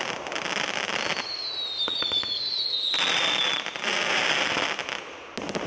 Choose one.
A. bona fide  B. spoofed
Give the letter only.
A